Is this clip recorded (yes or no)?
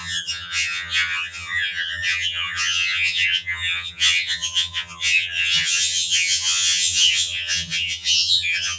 no